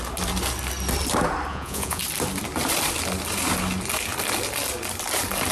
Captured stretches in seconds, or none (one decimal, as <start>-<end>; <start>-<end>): 0.0-1.5; 2.0-5.5